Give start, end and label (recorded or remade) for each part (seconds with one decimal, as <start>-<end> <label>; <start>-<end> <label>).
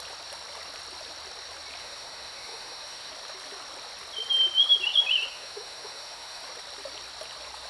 0.0-1.8 recorded; 1.8-3.1 remade; 3.1-5.3 recorded; 5.3-6.4 remade; 6.4-7.7 recorded